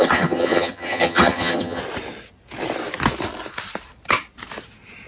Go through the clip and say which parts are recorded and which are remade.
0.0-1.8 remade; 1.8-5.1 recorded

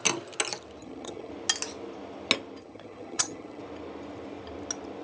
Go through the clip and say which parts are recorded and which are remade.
0.0-0.8 recorded; 0.8-1.3 remade; 1.3-2.6 recorded; 2.6-3.6 remade; 3.6-5.0 recorded

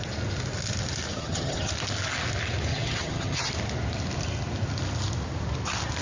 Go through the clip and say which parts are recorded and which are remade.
0.0-1.1 recorded; 1.1-1.7 remade; 1.7-2.7 recorded; 2.7-3.5 remade; 3.5-6.0 recorded

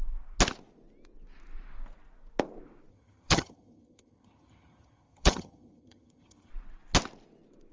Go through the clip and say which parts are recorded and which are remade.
0.0-2.9 recorded; 2.9-6.5 remade; 6.5-7.7 recorded

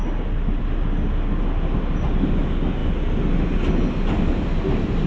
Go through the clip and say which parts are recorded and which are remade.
0.0-5.1 recorded

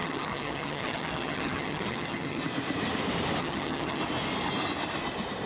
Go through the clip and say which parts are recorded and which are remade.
0.0-2.4 remade; 2.4-3.4 recorded; 3.4-4.0 remade; 4.0-5.5 recorded